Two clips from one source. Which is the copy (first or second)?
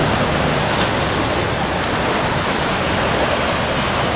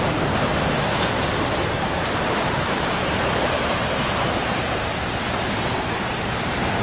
second